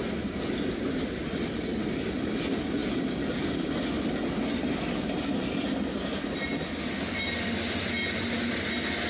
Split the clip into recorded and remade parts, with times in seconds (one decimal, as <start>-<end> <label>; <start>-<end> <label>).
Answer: 0.0-9.1 recorded